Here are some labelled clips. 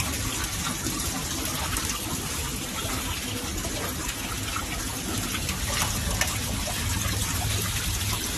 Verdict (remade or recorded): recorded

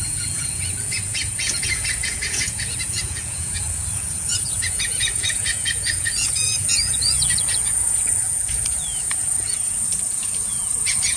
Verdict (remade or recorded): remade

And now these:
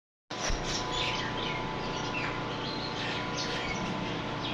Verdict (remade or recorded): recorded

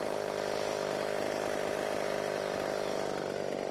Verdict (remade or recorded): remade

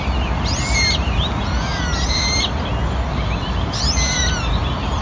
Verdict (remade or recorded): recorded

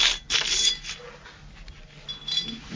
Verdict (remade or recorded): recorded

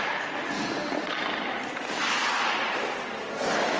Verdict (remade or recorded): recorded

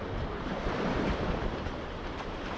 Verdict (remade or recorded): remade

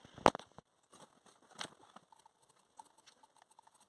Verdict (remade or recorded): recorded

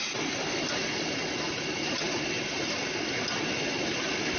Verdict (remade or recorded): recorded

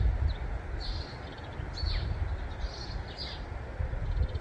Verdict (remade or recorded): recorded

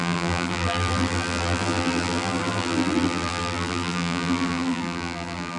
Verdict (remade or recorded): remade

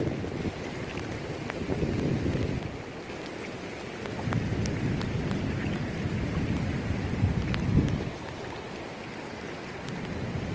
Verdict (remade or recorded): recorded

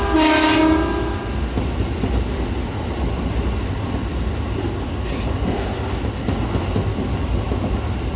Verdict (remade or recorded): recorded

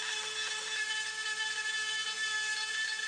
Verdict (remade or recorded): recorded